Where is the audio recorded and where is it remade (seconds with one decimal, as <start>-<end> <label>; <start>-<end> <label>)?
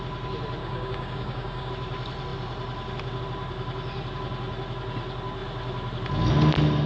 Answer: 0.0-0.6 recorded; 0.6-1.7 remade; 1.7-6.9 recorded